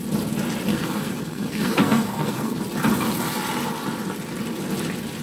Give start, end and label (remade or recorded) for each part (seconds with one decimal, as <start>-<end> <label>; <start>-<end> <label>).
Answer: 0.0-0.7 recorded; 0.7-2.6 remade; 2.6-5.2 recorded